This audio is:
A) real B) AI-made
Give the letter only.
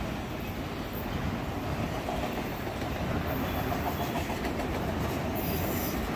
A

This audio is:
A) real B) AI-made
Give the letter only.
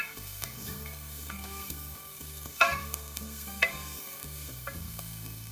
B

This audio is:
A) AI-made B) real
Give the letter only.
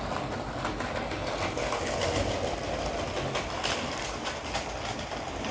B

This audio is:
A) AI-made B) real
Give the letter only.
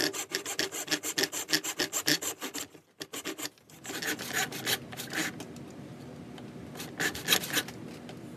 B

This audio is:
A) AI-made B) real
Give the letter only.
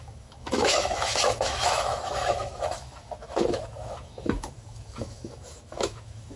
A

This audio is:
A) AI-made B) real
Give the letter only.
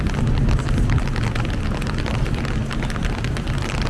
B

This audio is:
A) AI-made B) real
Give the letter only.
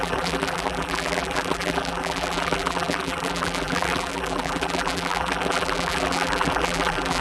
A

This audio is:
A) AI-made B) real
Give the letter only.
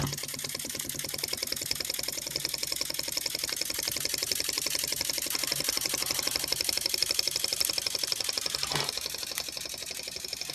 B